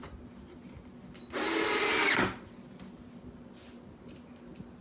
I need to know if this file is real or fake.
real